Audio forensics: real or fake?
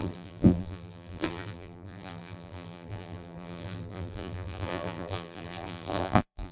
fake